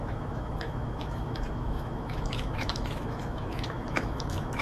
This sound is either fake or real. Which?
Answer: fake